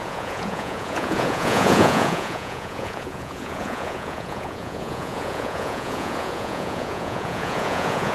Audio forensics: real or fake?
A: fake